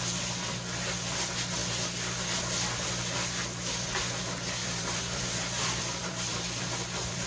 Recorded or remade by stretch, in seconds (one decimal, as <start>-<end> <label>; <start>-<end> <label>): 0.0-4.6 recorded; 4.6-7.3 remade